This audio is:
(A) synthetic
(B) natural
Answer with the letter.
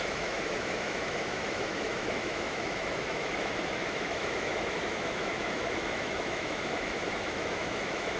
A